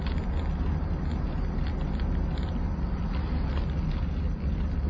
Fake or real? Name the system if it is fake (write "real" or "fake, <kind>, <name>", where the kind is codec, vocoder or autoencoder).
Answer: real